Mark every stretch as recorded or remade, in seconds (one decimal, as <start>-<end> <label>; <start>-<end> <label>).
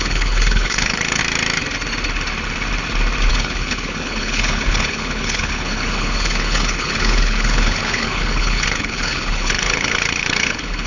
0.0-1.2 remade; 1.2-3.3 recorded; 3.3-10.9 remade